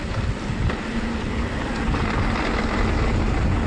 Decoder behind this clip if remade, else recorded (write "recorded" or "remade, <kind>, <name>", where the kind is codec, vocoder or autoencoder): recorded